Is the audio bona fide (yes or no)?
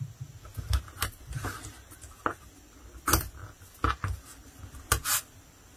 yes